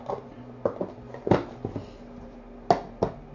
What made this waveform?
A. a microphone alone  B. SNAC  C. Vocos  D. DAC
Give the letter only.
A